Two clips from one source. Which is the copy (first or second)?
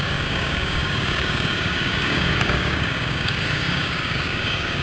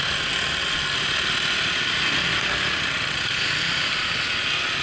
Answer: first